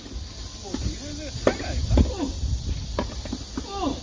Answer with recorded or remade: recorded